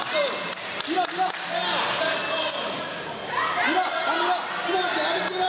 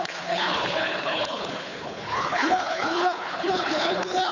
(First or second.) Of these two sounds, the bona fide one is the first